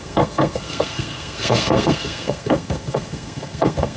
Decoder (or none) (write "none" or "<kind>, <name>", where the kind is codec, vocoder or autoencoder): codec, SNAC